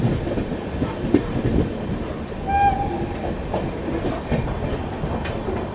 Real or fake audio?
real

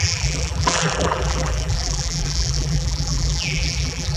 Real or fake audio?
fake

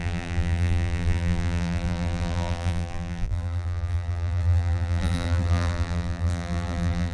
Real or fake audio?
fake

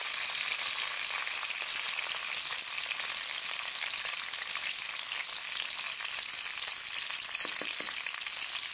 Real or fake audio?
real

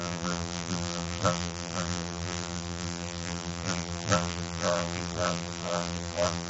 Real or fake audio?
fake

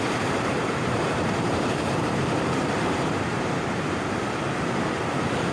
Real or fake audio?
fake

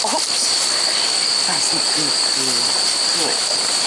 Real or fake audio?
fake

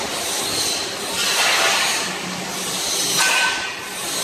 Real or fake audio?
real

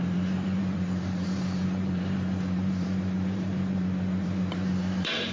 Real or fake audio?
fake